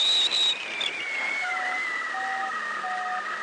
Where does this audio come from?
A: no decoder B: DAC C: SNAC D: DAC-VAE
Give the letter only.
A